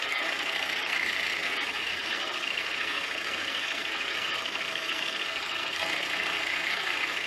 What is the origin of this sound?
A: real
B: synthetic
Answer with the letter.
B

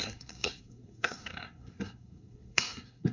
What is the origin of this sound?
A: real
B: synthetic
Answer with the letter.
B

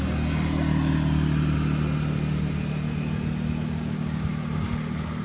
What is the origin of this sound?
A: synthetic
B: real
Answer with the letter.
B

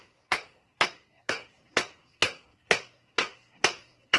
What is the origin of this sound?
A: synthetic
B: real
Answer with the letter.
A